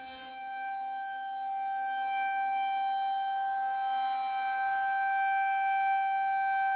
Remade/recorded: recorded